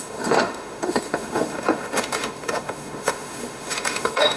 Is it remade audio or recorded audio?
remade